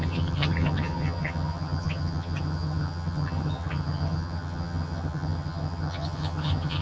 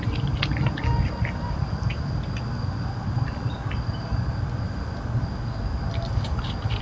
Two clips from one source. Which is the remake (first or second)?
first